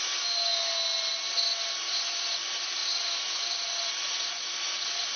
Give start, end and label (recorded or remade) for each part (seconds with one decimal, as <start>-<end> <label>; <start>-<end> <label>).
0.0-5.2 recorded